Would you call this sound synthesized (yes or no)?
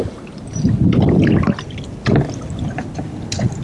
no